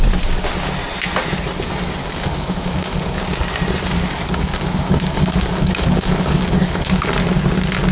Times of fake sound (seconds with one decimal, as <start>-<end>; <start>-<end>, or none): 2.0-3.2; 4.0-7.1